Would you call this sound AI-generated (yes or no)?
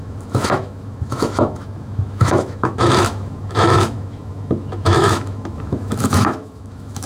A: yes